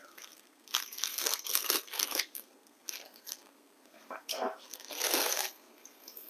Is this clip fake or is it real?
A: fake